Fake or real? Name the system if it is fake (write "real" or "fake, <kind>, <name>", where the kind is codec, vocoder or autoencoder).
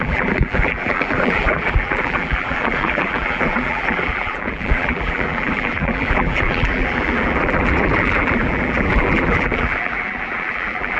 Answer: fake, vocoder, BigVGAN v2